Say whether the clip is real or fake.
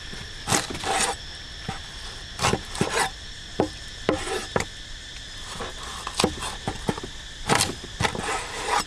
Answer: real